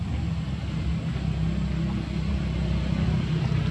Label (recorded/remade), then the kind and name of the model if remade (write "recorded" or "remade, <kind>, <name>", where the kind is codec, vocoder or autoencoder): recorded